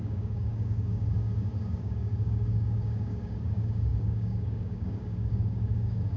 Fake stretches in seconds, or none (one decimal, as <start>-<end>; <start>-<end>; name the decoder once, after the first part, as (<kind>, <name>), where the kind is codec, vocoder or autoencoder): 0.0-6.2 (codec, DAC)

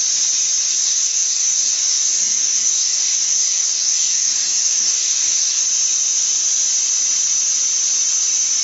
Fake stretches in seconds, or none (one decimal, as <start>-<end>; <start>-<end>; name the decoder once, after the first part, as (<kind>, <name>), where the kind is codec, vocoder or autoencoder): 0.7-5.6 (codec, DAC)